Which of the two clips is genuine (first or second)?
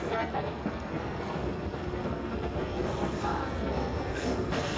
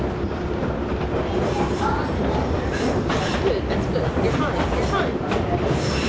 second